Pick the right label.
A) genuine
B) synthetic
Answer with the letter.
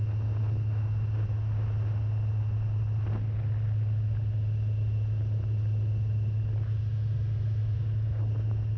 A